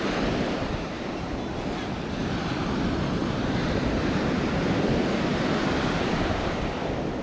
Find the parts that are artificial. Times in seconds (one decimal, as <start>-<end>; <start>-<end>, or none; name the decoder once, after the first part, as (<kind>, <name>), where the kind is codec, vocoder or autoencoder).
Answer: 2.2-2.8 (vocoder, BigVGAN v2); 3.2-5.6